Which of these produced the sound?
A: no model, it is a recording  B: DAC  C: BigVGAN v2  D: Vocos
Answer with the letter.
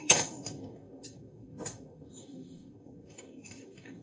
B